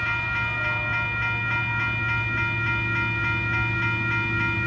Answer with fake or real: real